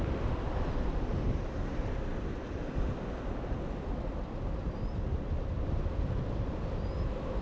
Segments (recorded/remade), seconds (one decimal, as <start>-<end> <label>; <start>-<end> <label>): 0.0-7.4 recorded

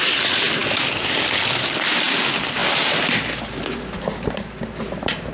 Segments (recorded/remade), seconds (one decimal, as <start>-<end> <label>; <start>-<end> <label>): 0.0-5.3 recorded